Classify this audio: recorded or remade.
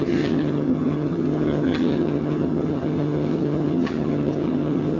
remade